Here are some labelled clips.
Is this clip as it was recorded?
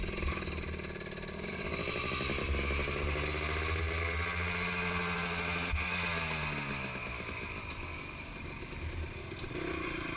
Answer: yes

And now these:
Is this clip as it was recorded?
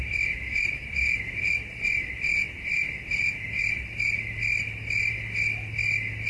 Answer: yes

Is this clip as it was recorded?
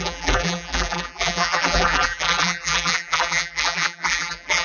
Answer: no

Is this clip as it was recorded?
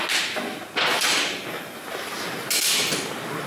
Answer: yes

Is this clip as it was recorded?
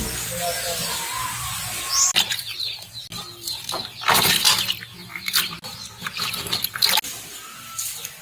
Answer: yes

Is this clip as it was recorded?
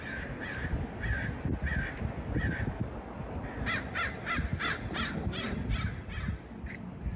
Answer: yes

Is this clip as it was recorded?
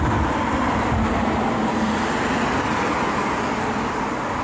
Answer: yes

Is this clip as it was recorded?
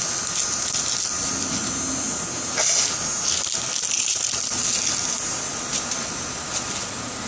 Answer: yes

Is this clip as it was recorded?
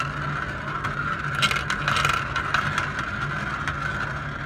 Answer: yes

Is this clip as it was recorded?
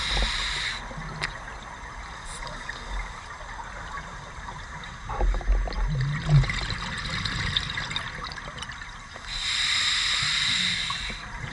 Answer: yes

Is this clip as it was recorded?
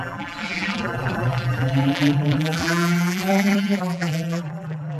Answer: no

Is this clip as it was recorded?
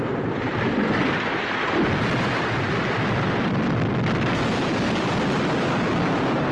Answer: no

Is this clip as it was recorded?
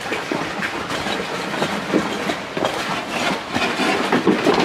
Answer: yes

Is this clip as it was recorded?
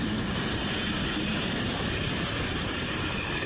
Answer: no